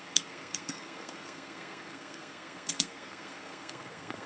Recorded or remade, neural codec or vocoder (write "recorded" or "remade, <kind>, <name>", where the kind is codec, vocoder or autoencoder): remade, codec, SNAC